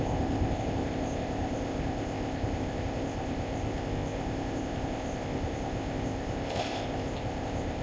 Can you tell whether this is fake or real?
fake